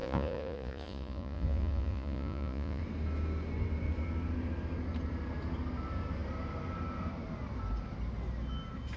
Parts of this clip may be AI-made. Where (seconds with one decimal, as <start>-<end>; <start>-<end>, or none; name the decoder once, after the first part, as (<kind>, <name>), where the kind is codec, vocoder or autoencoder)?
0.0-2.8 (vocoder, Vocos)